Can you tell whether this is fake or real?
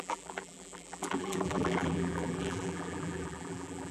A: fake